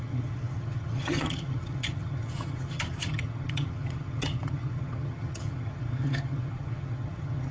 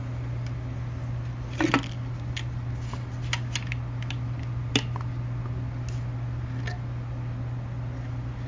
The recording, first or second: second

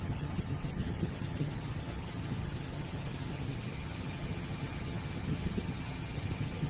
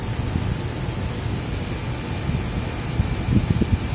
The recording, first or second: second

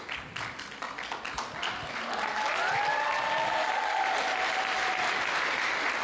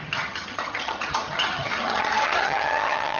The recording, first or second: first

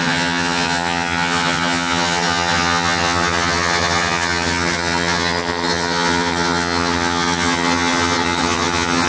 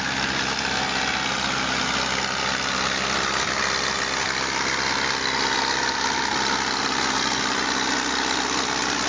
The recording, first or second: second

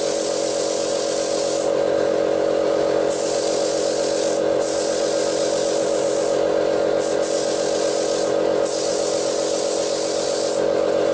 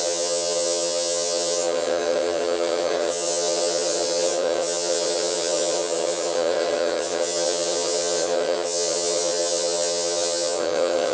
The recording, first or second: first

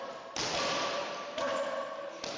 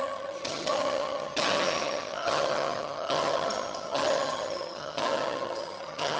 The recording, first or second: first